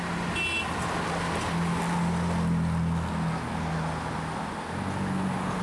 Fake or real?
real